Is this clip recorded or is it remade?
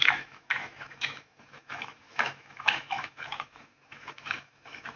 remade